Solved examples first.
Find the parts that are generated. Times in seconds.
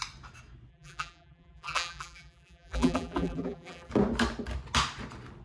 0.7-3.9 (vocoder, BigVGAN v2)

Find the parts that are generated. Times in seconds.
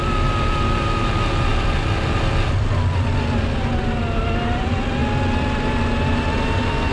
none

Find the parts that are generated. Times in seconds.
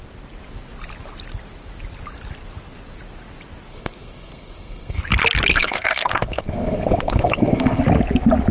3.7-5.0 (codec, SNAC); 5.5-7.8